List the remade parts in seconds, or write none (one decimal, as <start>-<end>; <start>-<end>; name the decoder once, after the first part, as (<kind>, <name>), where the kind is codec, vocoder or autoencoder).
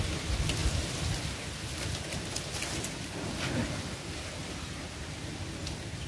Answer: none